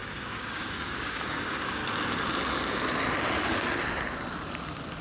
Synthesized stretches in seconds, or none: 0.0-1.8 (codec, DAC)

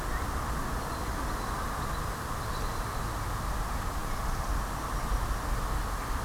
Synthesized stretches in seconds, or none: none

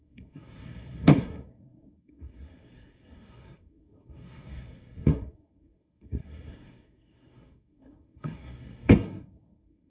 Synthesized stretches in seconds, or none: 0.0-9.9 (codec, SNAC)